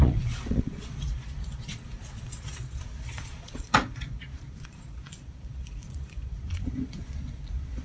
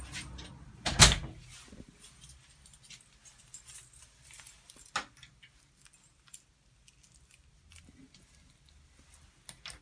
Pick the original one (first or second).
second